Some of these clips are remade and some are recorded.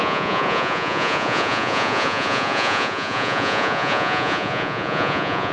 remade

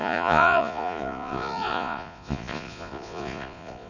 remade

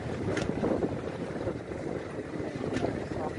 remade